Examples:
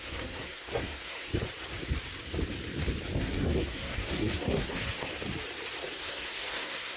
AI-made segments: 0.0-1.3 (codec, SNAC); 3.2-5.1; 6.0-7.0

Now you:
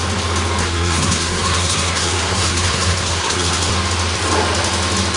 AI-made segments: 0.6-3.7 (codec, SNAC)

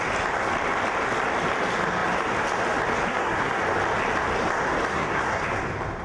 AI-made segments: 3.1-3.6 (codec, SNAC); 4.9-5.4

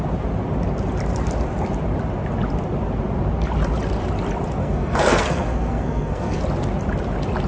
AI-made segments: 4.6-6.4 (codec, SNAC)